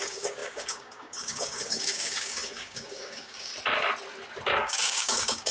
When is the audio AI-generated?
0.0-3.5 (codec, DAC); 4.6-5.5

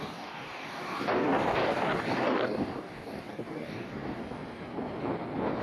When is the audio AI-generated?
0.0-4.2 (codec, DAC)

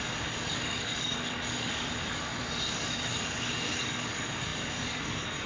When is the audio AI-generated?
0.0-5.5 (codec, DAC)

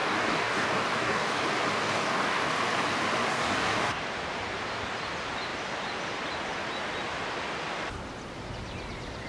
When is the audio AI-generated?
0.0-1.4 (codec, DAC); 1.8-2.5; 3.3-4.0

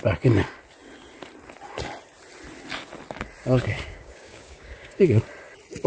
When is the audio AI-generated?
3.4-5.2 (codec, DAC)

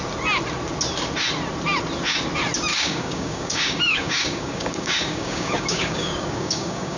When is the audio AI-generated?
2.7-7.0 (codec, DAC)